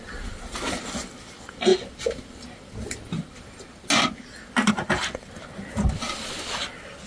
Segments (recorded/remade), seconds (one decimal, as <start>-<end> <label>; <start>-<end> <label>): 0.0-7.1 recorded